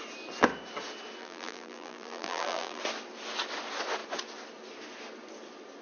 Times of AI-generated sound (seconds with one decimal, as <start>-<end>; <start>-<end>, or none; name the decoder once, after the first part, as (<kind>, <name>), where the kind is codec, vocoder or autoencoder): 1.2-2.8 (vocoder, BigVGAN v2)

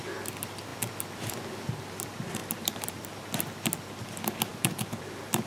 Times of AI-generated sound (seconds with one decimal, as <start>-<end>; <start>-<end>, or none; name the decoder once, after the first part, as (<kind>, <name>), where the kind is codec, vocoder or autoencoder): 2.4-3.2 (vocoder, BigVGAN v2); 4.5-5.5